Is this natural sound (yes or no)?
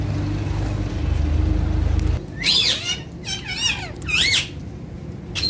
yes